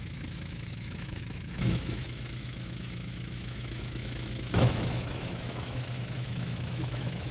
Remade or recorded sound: remade